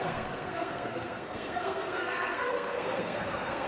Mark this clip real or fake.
fake